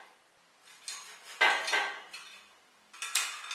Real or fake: real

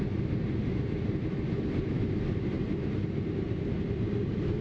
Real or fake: real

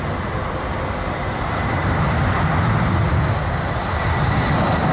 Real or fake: real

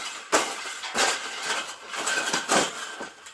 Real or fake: real